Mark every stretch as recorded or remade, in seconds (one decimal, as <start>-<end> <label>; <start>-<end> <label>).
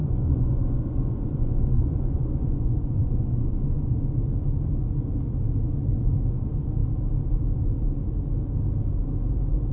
0.0-3.9 remade; 3.9-9.7 recorded